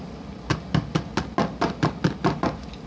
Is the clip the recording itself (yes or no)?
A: yes